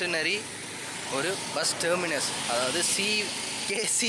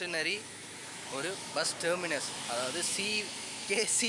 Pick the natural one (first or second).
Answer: first